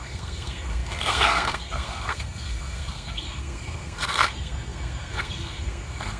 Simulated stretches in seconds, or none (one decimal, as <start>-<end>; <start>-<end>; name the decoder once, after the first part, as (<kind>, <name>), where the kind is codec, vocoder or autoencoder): 0.0-6.2 (codec, SNAC)